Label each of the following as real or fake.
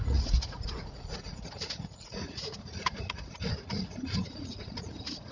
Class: fake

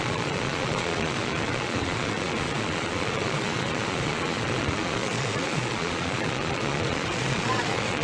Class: fake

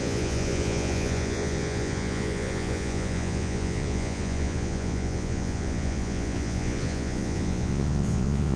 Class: fake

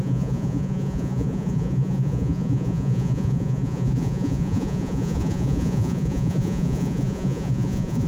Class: fake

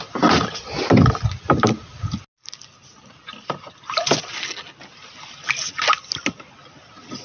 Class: real